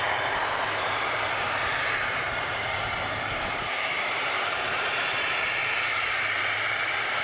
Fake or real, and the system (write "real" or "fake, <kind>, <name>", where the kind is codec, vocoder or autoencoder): fake, vocoder, BigVGAN v2